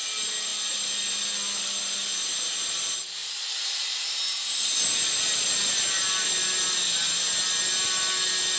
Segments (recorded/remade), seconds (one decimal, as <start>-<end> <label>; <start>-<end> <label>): 0.0-8.6 recorded